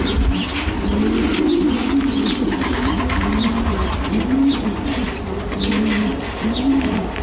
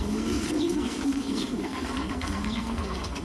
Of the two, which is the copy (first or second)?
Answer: second